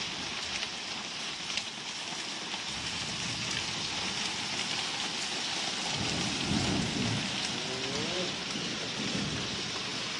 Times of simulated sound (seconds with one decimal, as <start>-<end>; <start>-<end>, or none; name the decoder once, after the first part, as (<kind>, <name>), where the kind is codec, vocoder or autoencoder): none